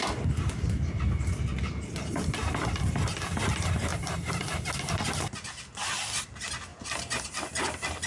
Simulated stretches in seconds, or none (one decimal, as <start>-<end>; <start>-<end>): 3.9-4.7; 6.7-7.3